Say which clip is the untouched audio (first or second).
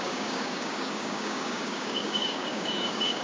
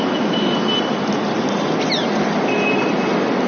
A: second